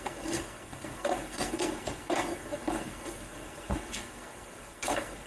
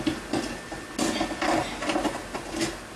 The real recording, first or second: second